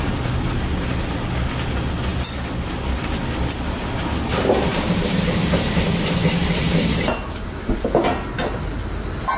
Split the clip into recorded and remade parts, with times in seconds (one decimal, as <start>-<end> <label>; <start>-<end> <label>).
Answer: 0.0-4.7 recorded; 4.7-7.7 remade; 7.7-9.4 recorded